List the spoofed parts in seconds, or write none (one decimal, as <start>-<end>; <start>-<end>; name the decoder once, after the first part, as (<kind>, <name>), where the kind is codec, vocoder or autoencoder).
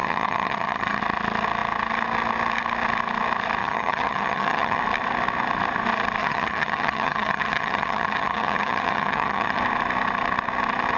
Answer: 0.0-1.0 (vocoder, HiFi-GAN); 3.6-4.8; 6.2-9.6